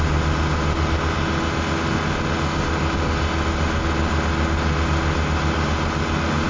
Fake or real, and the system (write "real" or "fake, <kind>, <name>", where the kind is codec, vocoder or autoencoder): real